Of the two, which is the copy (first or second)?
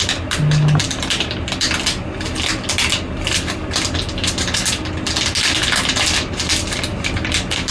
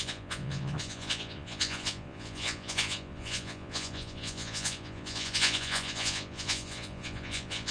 second